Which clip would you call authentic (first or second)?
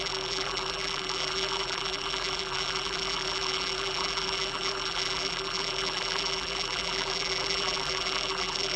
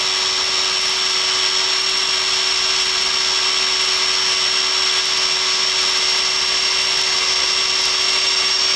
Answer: second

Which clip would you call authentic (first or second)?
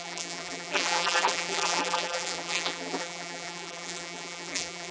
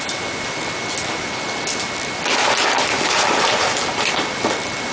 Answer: second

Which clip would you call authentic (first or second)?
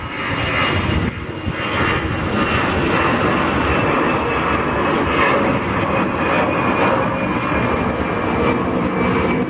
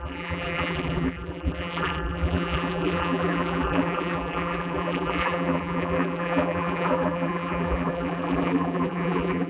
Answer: first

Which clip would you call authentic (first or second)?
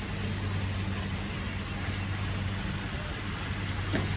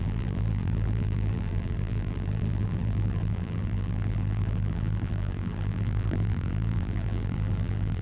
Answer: first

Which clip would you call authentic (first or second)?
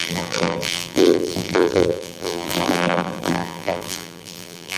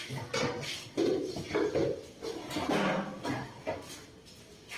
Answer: second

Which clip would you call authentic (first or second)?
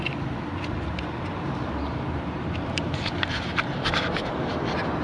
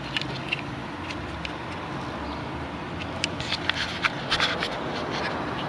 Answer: second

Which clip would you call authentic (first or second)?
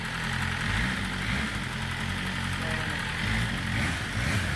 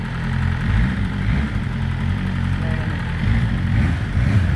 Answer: first